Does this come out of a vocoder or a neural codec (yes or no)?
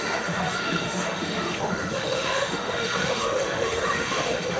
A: yes